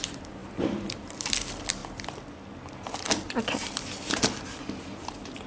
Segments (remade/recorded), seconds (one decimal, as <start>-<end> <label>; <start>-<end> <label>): 0.0-1.8 remade; 1.8-4.8 recorded; 4.8-5.5 remade